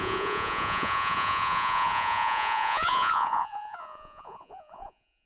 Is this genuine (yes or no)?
no